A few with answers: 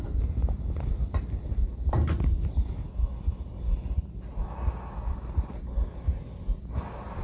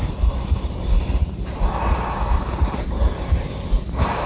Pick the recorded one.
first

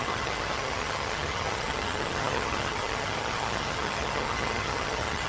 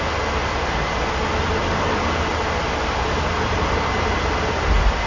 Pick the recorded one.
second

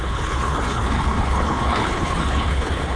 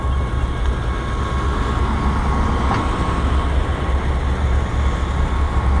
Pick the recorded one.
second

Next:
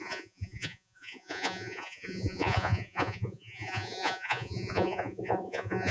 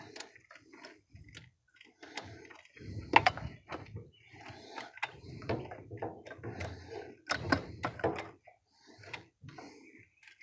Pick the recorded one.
second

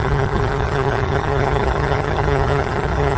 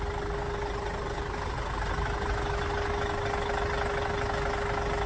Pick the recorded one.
second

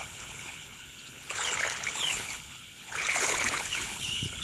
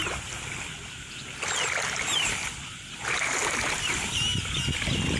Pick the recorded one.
second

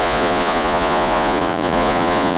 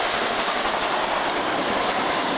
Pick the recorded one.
second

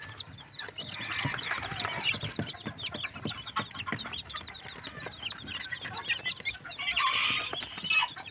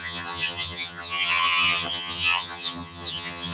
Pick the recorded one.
first